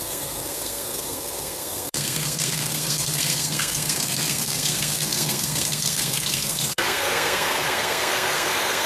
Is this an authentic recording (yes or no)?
no